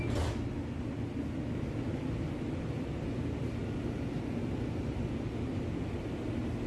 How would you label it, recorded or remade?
recorded